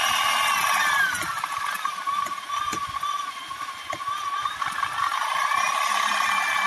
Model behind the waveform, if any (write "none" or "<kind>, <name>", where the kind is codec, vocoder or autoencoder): none